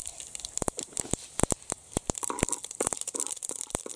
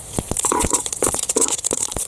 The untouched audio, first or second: first